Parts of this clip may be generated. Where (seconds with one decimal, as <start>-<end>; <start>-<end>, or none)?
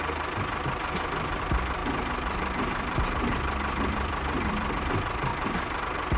1.8-4.8; 5.3-6.2